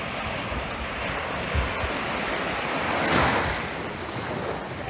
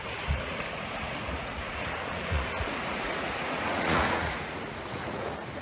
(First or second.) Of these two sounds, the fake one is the second